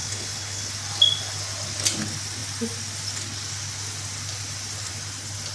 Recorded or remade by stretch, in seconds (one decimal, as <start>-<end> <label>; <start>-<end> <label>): 0.0-0.7 remade; 0.7-5.5 recorded